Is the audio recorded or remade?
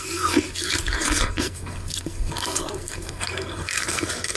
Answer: remade